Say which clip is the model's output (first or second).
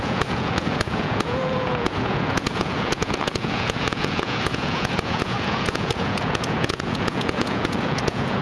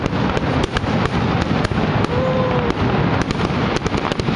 first